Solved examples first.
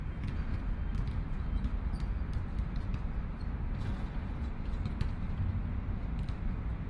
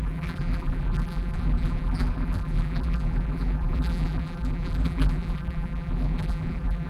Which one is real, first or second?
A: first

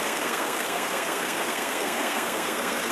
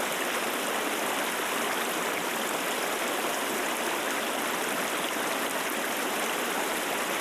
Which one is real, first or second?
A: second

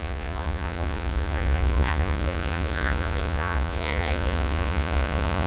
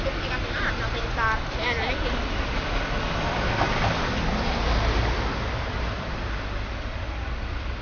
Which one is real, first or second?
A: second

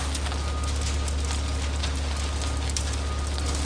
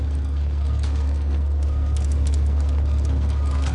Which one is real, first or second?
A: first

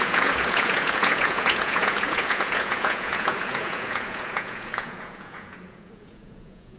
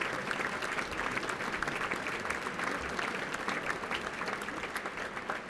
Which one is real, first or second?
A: second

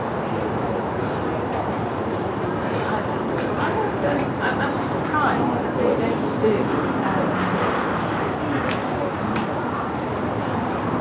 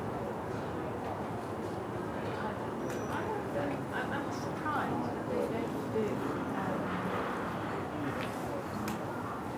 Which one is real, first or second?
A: second